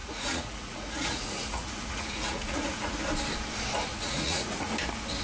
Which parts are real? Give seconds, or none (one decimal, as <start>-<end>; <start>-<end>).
3.0-3.9; 4.7-5.2